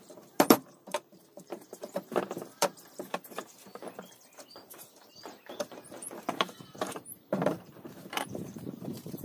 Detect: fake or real fake